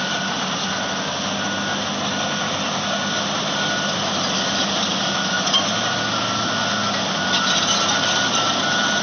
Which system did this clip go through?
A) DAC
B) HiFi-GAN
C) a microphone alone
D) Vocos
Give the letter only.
C